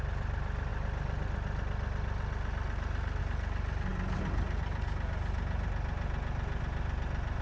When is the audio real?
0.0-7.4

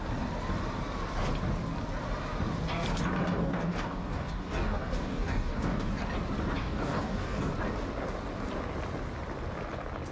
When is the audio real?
0.0-3.4; 5.9-6.6; 7.5-10.1